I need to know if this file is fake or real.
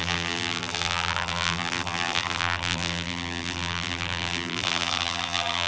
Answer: fake